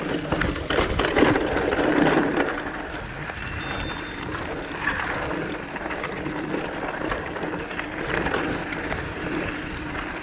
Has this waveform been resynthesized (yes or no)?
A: no